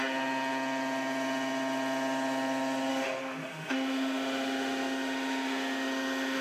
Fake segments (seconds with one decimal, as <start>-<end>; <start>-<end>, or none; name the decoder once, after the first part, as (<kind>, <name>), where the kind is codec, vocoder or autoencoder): 2.9-6.4 (autoencoder, DAC-VAE)